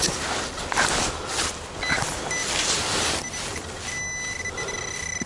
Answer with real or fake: real